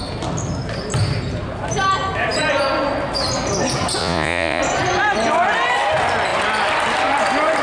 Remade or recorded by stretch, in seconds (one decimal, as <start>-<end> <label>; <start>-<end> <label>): 0.0-4.0 recorded; 4.0-4.6 remade; 4.6-7.6 recorded